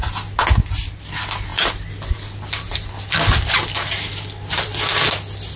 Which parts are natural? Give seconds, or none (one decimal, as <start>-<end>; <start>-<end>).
0.0-0.6; 1.1-1.5; 4.8-5.6